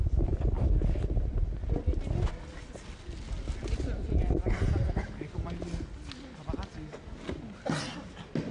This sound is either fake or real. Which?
real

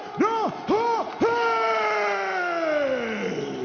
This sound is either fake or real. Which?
real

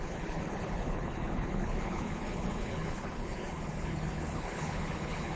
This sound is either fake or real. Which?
fake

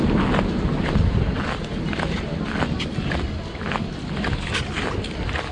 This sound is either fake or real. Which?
real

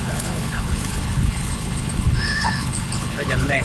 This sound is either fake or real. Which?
fake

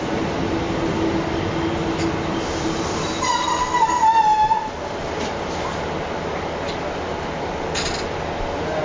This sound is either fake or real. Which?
real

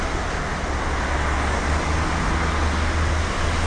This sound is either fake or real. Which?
real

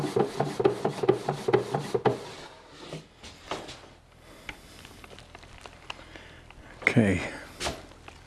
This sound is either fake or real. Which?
real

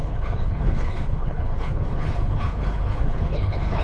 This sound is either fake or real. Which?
fake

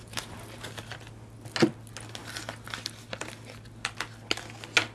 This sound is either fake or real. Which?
real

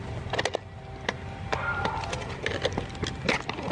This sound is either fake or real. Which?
real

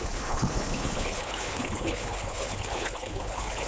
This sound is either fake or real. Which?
fake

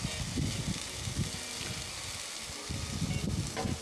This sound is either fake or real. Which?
real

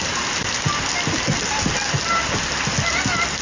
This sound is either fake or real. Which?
real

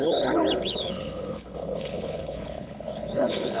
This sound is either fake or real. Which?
fake